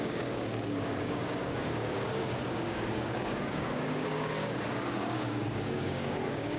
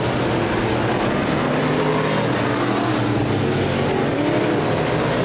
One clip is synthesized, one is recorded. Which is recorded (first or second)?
second